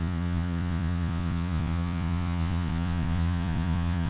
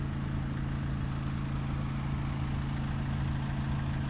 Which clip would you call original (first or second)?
second